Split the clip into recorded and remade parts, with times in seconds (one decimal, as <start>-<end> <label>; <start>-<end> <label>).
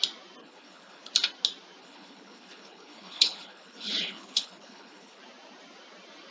0.0-0.4 recorded; 0.4-1.1 remade; 1.1-1.8 recorded; 1.8-5.2 remade; 5.2-6.3 recorded